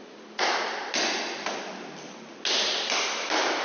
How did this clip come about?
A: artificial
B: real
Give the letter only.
B